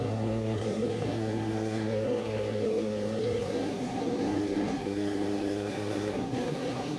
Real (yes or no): no